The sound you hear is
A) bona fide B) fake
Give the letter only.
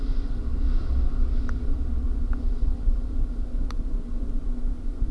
A